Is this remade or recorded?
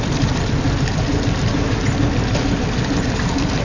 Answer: recorded